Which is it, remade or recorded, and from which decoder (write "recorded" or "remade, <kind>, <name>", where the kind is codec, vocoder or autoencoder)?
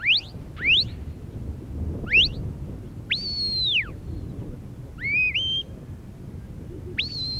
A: recorded